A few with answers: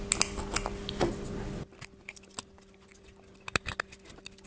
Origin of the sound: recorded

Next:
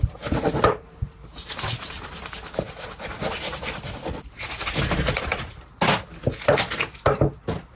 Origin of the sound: recorded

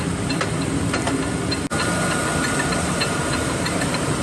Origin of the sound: recorded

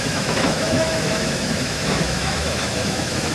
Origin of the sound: remade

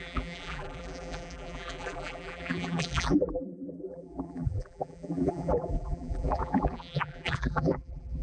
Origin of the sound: remade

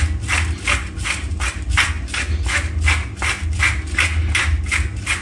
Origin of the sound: recorded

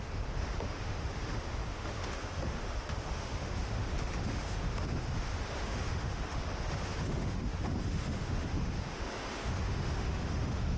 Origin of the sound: remade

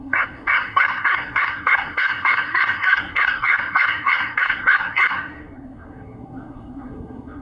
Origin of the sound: remade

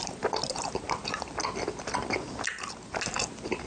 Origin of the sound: remade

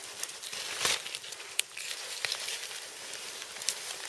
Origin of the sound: remade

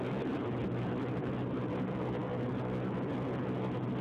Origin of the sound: recorded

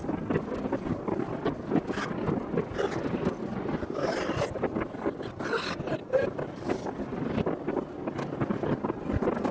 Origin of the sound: remade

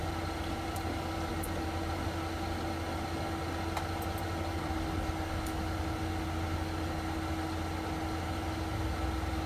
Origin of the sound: recorded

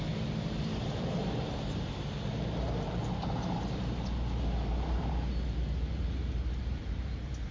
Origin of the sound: remade